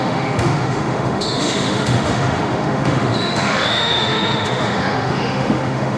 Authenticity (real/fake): fake